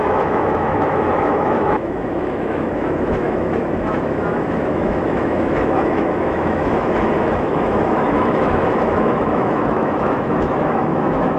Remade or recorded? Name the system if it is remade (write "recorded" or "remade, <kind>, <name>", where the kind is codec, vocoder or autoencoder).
remade, autoencoder, DAC-VAE